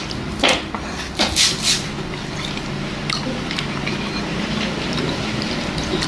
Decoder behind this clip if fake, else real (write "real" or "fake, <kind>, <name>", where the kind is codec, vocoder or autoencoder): real